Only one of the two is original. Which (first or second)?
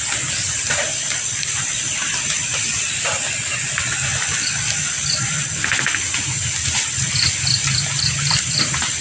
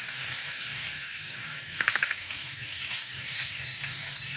first